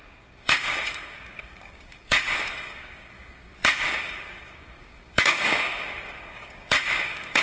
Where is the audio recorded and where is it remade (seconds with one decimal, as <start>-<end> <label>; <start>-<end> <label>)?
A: 0.0-7.4 remade